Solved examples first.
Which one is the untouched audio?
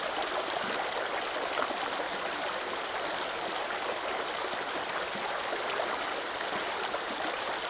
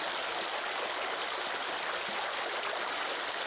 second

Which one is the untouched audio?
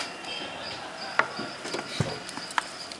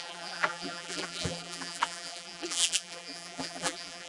first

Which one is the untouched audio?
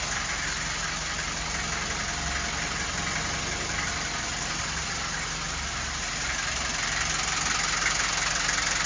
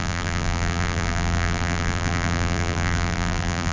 first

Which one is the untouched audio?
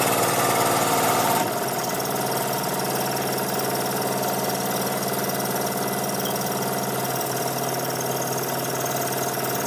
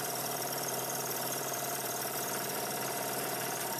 first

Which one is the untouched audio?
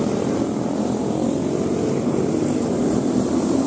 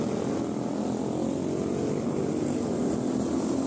second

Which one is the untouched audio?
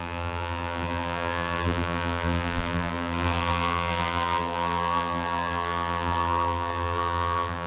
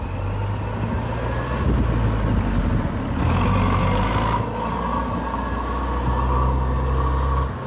second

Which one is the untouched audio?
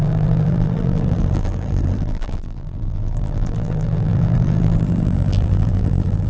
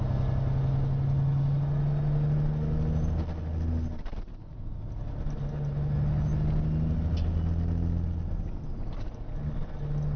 second